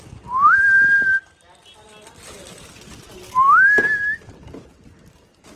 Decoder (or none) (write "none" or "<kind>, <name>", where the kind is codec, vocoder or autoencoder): none